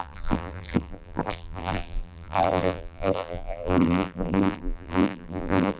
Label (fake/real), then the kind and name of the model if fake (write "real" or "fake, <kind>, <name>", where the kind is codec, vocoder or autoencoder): fake, vocoder, BigVGAN v2